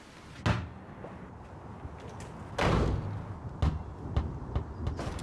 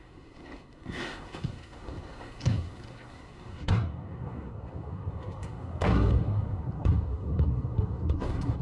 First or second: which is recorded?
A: first